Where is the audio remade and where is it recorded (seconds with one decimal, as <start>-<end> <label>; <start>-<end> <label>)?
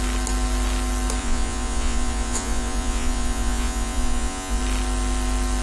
0.0-1.2 recorded; 1.2-4.6 remade; 4.6-5.6 recorded